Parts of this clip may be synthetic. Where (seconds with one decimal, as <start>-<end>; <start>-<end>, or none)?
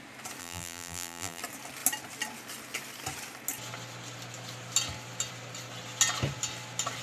0.4-1.4